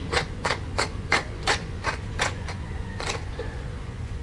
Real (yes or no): no